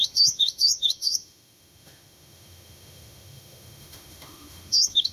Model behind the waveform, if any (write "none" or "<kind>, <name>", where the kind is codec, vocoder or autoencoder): autoencoder, DAC-VAE